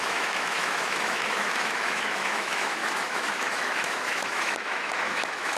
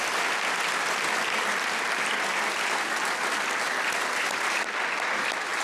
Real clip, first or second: second